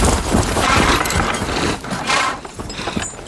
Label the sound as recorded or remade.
remade